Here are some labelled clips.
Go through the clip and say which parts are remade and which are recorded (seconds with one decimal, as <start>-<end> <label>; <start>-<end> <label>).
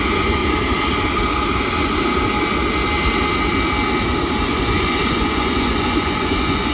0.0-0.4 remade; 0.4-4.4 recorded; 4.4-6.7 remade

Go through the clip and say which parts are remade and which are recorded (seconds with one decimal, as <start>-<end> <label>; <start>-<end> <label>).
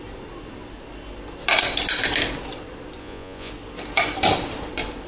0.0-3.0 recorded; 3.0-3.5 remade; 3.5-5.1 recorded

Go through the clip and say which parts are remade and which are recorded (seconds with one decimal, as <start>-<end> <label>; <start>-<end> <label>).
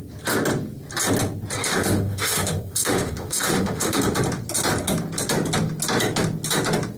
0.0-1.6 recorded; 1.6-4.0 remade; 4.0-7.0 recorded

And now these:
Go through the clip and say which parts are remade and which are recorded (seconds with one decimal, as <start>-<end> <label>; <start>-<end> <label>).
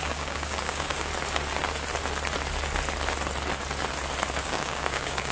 0.0-1.1 remade; 1.1-4.3 recorded; 4.3-5.3 remade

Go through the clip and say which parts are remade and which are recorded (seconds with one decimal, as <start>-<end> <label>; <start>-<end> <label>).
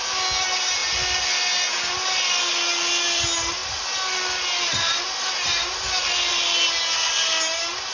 0.0-7.9 recorded